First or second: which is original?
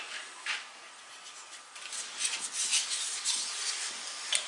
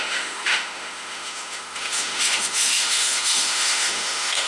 first